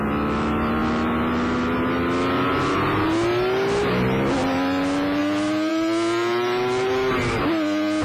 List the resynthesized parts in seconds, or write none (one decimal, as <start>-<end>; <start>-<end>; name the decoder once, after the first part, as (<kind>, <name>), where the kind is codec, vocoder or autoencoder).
none